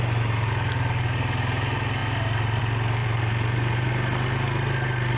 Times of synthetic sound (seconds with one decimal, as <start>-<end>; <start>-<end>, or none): 3.0-3.9